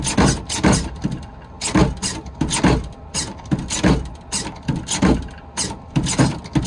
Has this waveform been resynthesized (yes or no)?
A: no